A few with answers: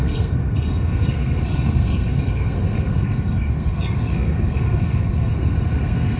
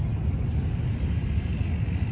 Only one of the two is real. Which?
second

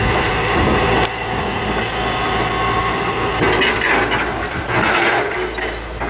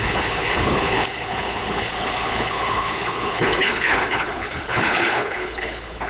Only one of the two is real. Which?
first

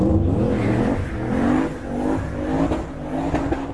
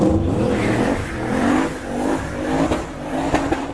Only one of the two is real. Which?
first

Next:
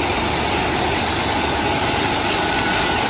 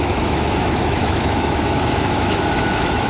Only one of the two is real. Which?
first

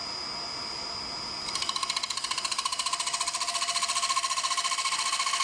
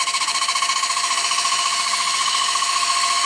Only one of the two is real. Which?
first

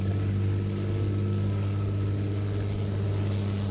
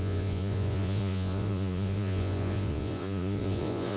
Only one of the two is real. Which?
first